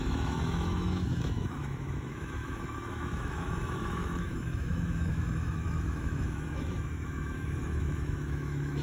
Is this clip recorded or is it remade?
remade